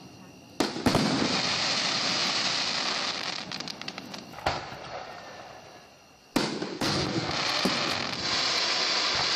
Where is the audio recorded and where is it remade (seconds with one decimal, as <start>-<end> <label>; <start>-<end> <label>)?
0.0-6.7 recorded; 6.7-7.3 remade; 7.3-9.4 recorded